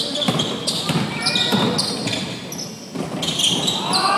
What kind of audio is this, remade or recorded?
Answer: recorded